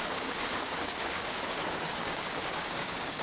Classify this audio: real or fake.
fake